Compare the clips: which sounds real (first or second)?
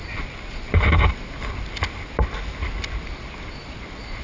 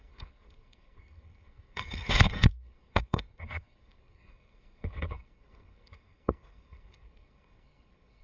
first